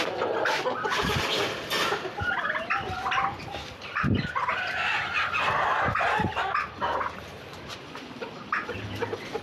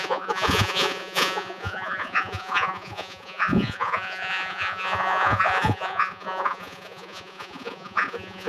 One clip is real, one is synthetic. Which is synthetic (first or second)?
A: second